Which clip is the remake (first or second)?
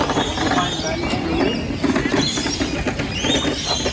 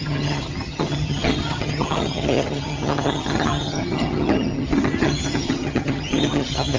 second